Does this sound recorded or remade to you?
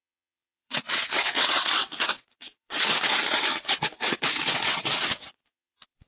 remade